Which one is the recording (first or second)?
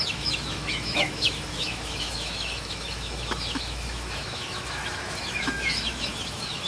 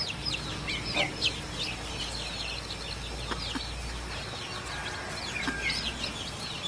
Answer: second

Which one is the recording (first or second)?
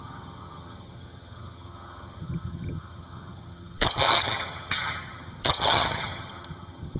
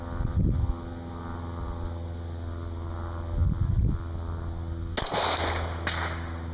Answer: second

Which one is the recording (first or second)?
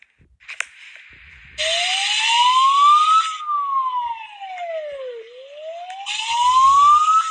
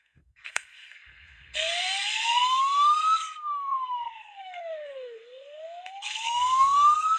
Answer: first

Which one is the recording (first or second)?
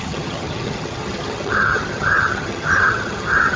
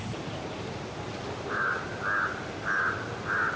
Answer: second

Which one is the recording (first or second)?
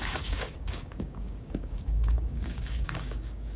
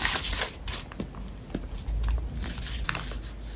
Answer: second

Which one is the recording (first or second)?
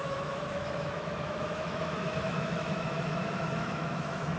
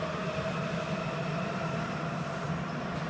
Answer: second